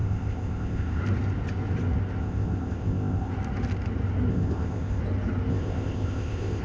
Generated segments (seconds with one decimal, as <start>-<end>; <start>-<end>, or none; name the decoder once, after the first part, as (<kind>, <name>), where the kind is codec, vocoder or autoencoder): 0.0-1.0 (codec, ZipCodec); 2.2-3.3; 4.3-5.0; 5.5-6.6